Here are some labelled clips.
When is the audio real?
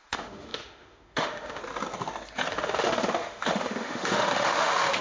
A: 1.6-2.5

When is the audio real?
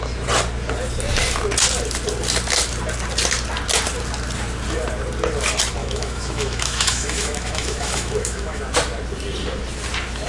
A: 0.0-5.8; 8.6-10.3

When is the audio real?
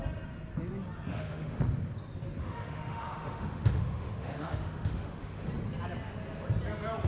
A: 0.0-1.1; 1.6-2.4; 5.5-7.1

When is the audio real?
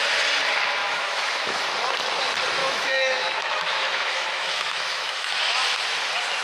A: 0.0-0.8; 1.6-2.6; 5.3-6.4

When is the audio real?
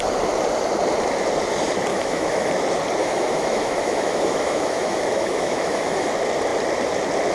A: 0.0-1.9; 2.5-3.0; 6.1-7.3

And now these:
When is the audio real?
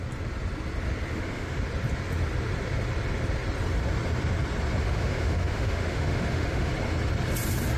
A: 0.0-1.1; 1.6-4.8; 6.7-7.8